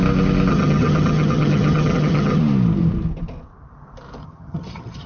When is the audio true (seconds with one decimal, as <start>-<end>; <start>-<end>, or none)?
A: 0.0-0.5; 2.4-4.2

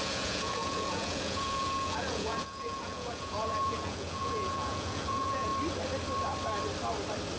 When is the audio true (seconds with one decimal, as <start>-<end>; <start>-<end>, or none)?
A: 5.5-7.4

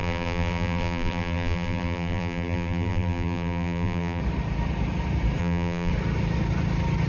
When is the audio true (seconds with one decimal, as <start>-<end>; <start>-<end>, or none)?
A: 4.2-5.4; 5.9-7.1

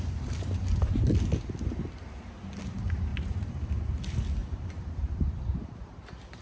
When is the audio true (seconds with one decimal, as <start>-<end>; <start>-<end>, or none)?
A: 0.0-3.1; 3.9-4.4

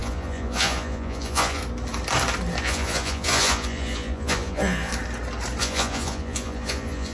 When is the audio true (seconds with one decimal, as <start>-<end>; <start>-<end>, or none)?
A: 1.6-2.6; 4.9-5.6

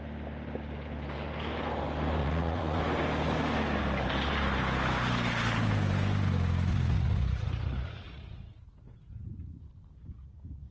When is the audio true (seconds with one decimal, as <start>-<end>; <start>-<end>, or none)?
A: 0.0-2.2; 2.8-6.7; 9.6-10.7

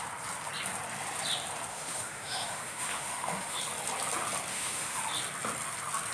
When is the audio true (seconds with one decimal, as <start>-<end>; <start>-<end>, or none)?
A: 0.0-1.7; 3.6-4.5; 5.0-6.1

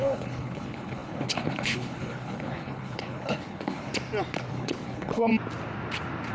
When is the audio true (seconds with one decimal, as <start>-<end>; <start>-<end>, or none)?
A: 3.9-4.5; 5.3-6.3